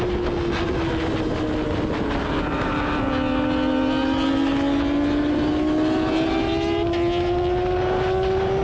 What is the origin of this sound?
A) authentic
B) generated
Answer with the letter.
A